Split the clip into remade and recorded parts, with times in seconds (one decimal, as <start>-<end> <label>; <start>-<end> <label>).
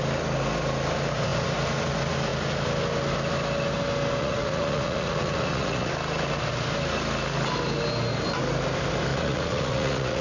0.0-4.2 recorded; 4.2-5.9 remade; 5.9-9.1 recorded; 9.1-10.2 remade